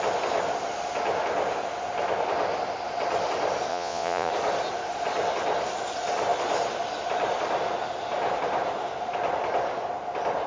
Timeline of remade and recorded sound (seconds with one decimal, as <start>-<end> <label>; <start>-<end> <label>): 0.0-3.7 recorded; 3.7-4.3 remade; 4.3-10.5 recorded